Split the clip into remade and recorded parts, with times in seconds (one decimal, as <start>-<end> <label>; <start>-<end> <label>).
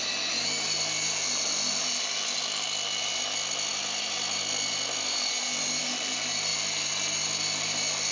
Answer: 0.0-8.1 recorded